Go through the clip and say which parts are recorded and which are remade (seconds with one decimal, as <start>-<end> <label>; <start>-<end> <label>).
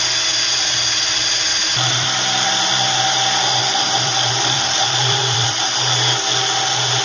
0.0-1.6 recorded; 1.6-5.8 remade; 5.8-7.0 recorded